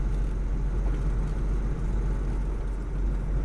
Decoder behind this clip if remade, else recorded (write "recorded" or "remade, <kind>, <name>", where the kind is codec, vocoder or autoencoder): recorded